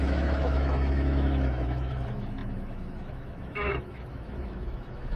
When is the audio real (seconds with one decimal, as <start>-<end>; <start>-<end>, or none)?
none